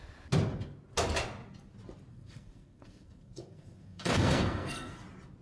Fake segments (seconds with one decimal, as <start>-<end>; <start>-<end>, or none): 2.1-5.0